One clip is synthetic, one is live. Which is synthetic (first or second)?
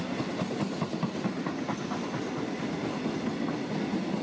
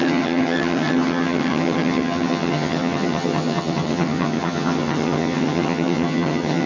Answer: second